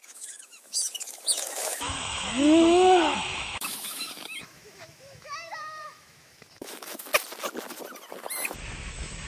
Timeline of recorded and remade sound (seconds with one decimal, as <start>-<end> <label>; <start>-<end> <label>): 0.0-7.1 remade; 7.1-8.9 recorded; 8.9-9.3 remade